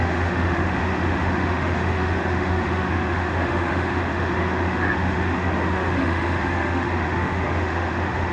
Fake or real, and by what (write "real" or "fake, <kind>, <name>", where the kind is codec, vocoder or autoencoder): fake, autoencoder, DAC-VAE